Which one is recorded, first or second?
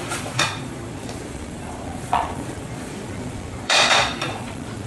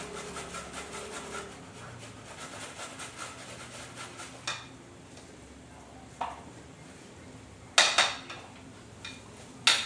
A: second